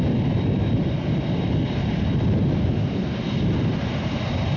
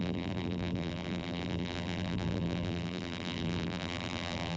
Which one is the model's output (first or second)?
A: second